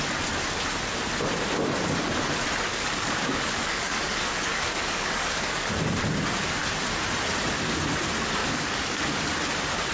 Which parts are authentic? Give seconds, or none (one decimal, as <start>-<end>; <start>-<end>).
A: 0.0-2.7; 5.7-8.4; 9.0-9.9